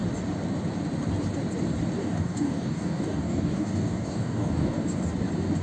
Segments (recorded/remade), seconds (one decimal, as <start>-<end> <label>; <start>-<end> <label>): 0.0-2.0 recorded; 2.0-5.0 remade; 5.0-5.6 recorded